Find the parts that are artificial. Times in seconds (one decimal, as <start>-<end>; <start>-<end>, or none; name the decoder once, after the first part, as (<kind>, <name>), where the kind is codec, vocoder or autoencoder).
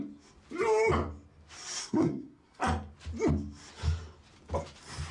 1.8-2.6 (codec, SNAC)